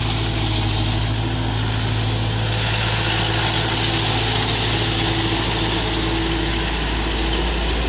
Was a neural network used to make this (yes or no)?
no